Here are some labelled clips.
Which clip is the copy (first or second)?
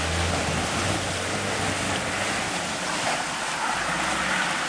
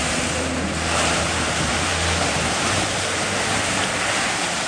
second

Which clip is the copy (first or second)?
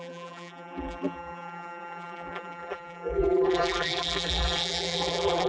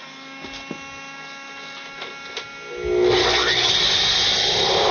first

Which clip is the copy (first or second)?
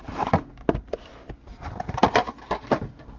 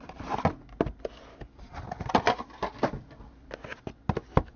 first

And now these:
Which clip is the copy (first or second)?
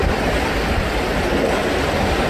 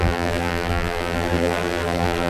second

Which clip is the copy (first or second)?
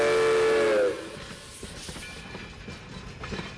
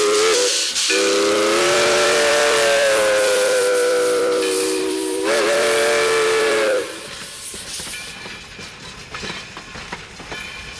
second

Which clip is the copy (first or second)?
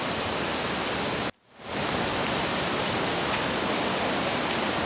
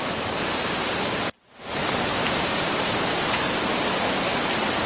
second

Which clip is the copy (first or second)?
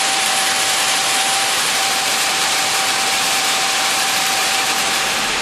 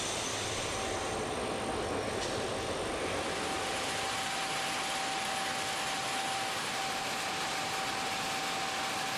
first